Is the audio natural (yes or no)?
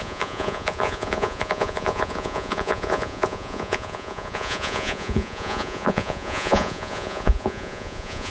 no